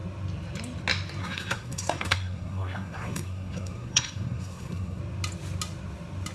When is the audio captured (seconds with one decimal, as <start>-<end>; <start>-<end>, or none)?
0.0-1.2; 5.0-6.3